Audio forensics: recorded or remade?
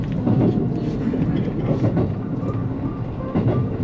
recorded